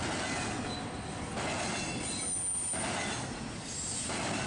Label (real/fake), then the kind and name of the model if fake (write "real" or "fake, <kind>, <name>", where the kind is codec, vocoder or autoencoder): real